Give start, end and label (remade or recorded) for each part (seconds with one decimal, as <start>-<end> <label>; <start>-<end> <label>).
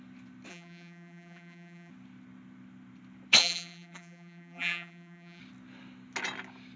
0.0-0.5 recorded; 0.5-1.9 remade; 1.9-3.4 recorded; 3.4-5.4 remade; 5.4-6.8 recorded